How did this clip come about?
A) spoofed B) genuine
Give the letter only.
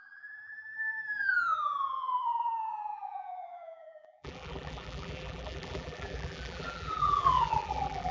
A